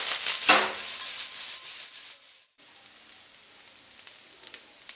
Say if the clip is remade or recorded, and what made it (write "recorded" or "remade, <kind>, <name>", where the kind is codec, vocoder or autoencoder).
recorded